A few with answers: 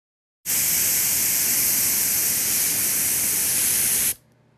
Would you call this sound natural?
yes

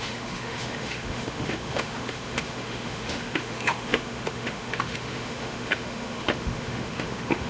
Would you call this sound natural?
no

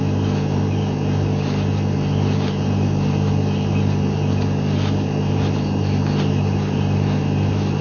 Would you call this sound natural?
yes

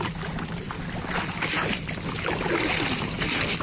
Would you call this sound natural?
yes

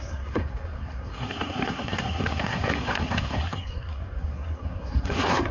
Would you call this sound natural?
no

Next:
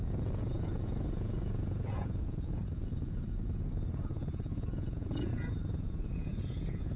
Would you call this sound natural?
no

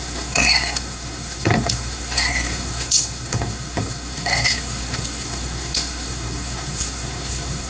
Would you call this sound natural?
no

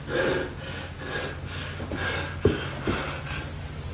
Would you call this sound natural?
yes